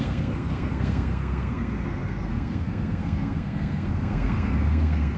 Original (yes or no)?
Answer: no